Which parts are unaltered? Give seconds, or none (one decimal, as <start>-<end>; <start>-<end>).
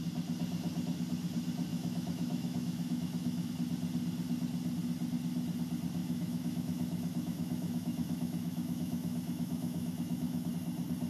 0.0-1.7; 3.5-6.0; 10.5-11.1